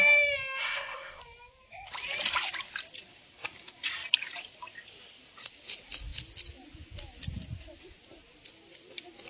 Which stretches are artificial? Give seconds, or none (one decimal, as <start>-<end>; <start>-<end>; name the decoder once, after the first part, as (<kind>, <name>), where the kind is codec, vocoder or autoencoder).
0.6-1.2 (codec, ZipCodec)